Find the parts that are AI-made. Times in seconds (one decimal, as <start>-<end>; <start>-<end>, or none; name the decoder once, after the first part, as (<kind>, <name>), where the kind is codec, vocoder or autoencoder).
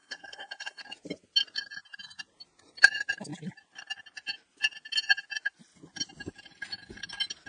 0.0-0.8 (codec, SNAC)